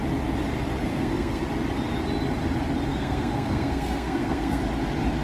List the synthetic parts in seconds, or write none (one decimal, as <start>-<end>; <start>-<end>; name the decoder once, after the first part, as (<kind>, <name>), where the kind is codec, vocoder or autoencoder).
0.9-1.4 (codec, SNAC); 2.9-4.6